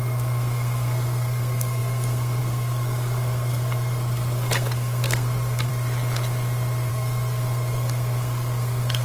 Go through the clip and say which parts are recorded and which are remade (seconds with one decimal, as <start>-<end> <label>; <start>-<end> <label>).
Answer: 0.0-5.7 remade; 5.7-6.9 recorded; 6.9-9.0 remade